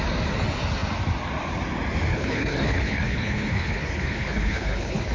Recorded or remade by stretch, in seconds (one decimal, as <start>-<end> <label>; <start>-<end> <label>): 0.0-2.1 recorded; 2.1-5.1 remade